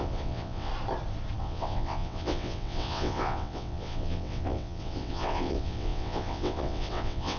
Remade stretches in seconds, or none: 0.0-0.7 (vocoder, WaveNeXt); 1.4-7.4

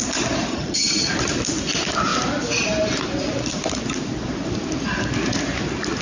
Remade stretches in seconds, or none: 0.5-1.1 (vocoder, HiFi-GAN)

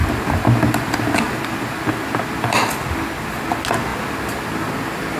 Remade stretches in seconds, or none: none